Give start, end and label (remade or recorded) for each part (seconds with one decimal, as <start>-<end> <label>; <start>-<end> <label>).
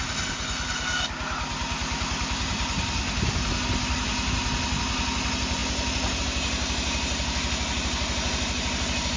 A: 0.0-9.2 recorded